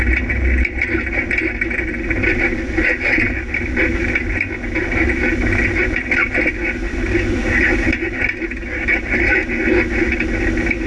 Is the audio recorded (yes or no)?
yes